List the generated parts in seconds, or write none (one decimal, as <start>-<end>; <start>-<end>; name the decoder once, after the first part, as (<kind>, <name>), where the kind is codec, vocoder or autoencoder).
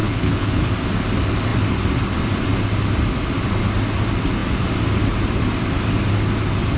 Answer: 0.0-0.7 (codec, HILCodec)